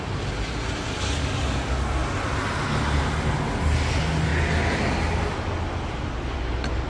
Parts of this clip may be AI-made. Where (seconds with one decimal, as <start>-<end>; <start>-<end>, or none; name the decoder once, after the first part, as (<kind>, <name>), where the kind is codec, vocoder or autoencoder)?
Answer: 1.2-1.9 (codec, DAC)